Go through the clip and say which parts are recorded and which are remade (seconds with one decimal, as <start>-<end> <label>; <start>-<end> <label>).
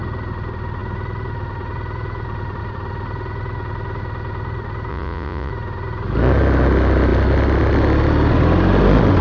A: 0.0-4.9 recorded; 4.9-5.5 remade; 5.5-9.2 recorded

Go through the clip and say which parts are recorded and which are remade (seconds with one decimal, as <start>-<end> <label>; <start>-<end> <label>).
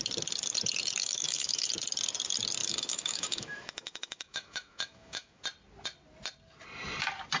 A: 0.0-1.0 recorded; 1.0-1.7 remade; 1.7-2.6 recorded; 2.6-5.4 remade; 5.4-7.4 recorded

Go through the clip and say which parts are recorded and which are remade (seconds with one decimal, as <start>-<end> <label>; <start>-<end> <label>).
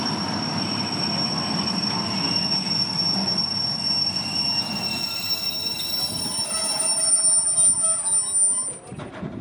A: 0.0-9.4 recorded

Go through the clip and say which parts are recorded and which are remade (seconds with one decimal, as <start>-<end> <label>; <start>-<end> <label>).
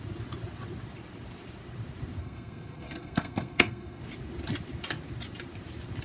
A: 0.0-2.2 recorded; 2.2-4.0 remade; 4.0-6.0 recorded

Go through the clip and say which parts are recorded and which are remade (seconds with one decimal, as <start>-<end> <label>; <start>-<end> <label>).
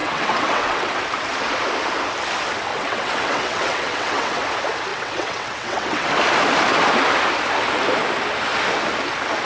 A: 0.0-0.9 remade; 0.9-2.7 recorded; 2.7-4.4 remade; 4.4-4.9 recorded; 4.9-6.1 remade; 6.1-9.4 recorded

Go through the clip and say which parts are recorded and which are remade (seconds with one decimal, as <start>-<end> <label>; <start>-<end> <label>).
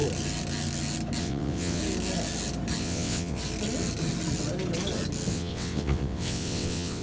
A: 0.0-1.2 recorded; 1.2-1.8 remade; 1.8-2.8 recorded; 2.8-3.4 remade; 3.4-5.3 recorded; 5.3-7.0 remade